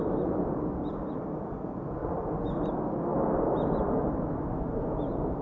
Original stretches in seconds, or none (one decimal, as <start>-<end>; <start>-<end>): 0.0-5.4